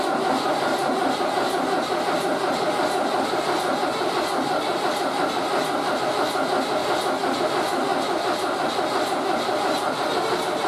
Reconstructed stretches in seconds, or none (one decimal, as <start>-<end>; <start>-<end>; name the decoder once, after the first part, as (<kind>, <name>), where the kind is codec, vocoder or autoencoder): none